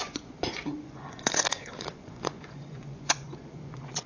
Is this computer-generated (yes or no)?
yes